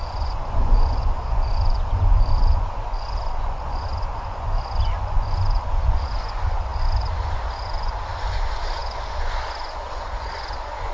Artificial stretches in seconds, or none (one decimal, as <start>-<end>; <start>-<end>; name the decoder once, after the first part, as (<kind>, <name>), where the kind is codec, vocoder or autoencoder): 0.0-10.9 (vocoder, Vocos)